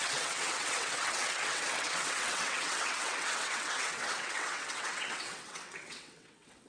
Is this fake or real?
fake